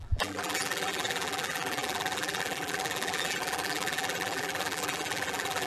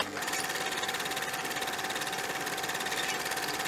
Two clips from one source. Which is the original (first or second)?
second